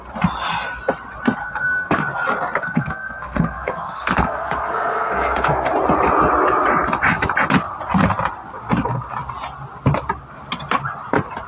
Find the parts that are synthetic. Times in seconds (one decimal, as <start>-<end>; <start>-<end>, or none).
1.4-2.0; 2.6-5.7